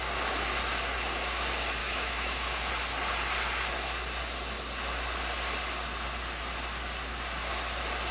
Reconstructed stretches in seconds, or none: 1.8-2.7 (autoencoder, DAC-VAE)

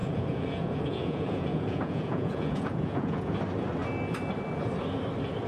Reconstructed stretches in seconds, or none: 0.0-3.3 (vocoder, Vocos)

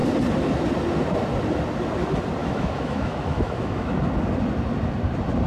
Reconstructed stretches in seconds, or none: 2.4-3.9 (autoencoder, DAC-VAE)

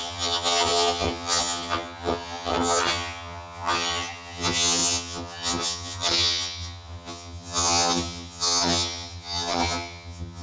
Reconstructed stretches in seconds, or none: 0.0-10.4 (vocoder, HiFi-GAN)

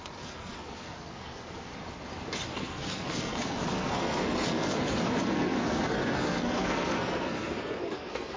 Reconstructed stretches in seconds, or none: 0.0-1.7 (codec, SNAC); 2.5-8.4

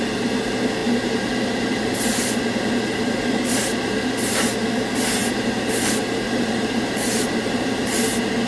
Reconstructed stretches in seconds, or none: 5.2-8.0 (vocoder, BigVGAN v2)

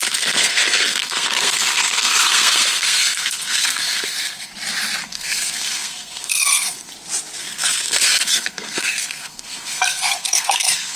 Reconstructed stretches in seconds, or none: 0.0-4.5 (codec, SNAC); 5.0-6.9; 7.4-11.0

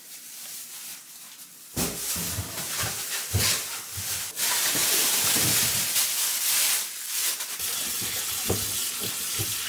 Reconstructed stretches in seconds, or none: none